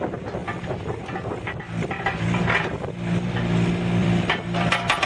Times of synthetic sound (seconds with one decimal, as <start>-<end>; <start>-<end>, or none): 4.0-5.1